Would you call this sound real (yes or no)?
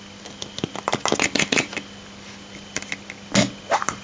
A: yes